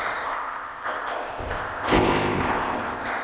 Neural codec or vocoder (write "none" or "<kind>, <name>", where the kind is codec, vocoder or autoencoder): codec, ZipCodec